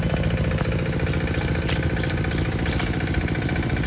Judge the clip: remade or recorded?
recorded